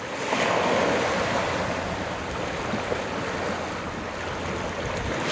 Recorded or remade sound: recorded